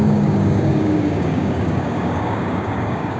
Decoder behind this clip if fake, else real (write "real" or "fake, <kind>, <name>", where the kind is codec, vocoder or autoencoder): fake, codec, DAC